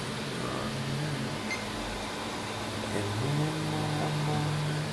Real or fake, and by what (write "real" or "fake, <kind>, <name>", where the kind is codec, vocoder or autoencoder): real